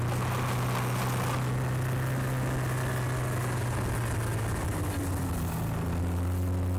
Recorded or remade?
recorded